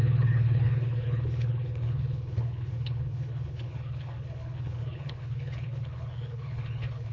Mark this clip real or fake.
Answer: fake